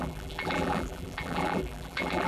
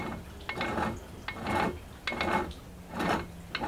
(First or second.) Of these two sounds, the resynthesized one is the first